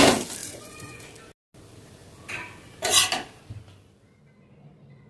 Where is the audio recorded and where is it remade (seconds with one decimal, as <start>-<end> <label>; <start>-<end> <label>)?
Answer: 0.0-0.4 recorded; 0.4-1.0 remade; 1.0-5.1 recorded